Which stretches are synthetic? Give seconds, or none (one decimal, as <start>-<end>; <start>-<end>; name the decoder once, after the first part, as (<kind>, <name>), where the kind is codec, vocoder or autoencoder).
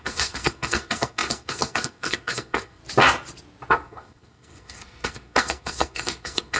0.0-2.8 (codec, SNAC); 3.7-6.6